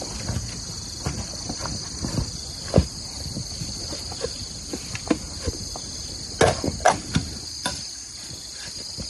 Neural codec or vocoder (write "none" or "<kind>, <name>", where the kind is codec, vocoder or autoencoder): none